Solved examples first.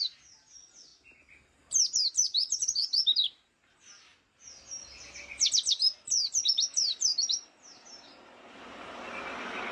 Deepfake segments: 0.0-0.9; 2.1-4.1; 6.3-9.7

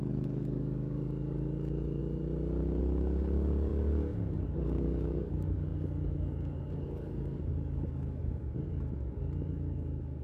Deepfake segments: 0.0-2.0; 2.8-10.2

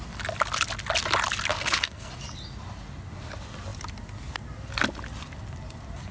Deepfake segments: 1.5-2.1

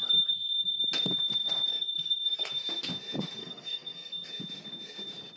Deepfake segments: 0.0-0.8; 1.7-2.5; 3.4-4.3

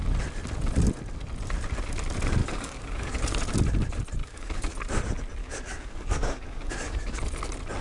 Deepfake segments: 2.4-3.2; 4.2-4.7; 5.4-7.2